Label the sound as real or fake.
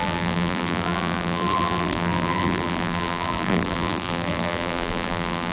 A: fake